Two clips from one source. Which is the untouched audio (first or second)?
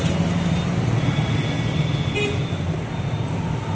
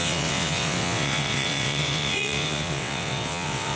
first